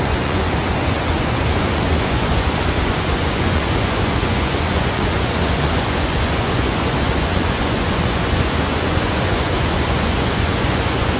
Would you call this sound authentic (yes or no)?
no